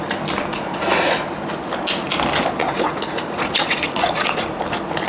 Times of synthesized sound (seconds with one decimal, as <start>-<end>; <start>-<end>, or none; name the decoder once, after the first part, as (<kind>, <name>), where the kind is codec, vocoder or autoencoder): 0.5-1.2 (vocoder, Vocos); 2.6-4.6

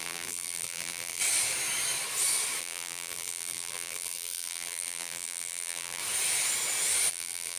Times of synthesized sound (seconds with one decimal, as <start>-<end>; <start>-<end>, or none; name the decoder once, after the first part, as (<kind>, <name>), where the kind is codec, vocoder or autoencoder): 0.0-1.2 (vocoder, BigVGAN v2); 2.6-6.0; 7.1-7.6

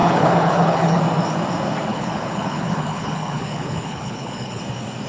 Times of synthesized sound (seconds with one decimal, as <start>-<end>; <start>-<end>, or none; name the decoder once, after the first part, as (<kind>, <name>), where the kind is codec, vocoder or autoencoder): 0.0-1.0 (codec, HILCodec); 1.9-4.6

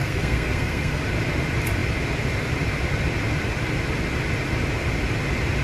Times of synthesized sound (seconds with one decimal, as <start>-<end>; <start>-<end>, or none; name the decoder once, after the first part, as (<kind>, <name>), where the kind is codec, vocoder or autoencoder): 0.0-1.0 (codec, SNAC)

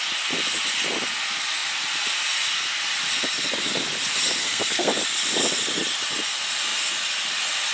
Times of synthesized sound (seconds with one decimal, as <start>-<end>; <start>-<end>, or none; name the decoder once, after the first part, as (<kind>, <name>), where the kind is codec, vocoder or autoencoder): 4.4-4.9 (codec, SNAC)

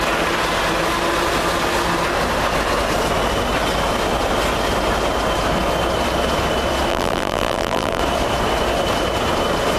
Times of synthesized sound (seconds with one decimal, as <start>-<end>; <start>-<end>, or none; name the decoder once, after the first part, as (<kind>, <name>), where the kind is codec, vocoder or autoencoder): 6.9-8.0 (vocoder, BigVGAN v2)

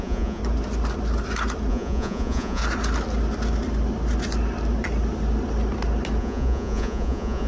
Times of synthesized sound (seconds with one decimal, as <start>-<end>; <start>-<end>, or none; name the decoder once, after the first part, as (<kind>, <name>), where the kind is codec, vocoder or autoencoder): 0.0-0.4 (vocoder, Vocos); 1.7-2.6; 6.2-7.5